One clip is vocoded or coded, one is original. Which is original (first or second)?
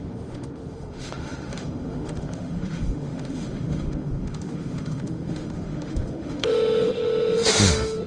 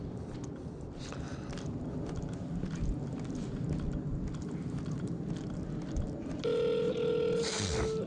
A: second